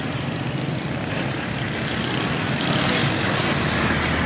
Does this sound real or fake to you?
real